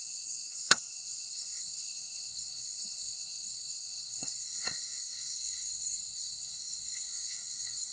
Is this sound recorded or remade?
remade